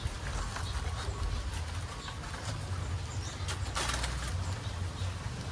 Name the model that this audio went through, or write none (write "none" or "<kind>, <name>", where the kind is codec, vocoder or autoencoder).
none